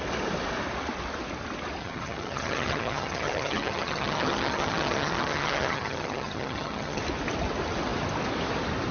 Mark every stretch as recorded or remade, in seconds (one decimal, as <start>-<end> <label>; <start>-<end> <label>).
0.0-1.8 recorded; 1.8-7.0 remade; 7.0-8.9 recorded

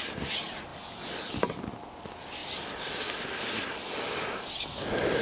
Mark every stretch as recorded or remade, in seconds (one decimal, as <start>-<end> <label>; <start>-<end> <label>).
0.0-5.2 recorded

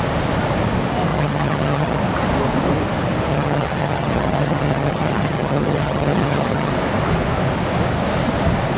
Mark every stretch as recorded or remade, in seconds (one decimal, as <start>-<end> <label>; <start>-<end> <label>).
0.0-1.1 recorded; 1.1-2.0 remade; 2.0-3.3 recorded; 3.3-6.7 remade; 6.7-8.8 recorded